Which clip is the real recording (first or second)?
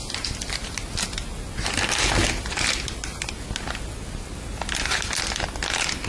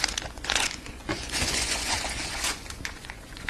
first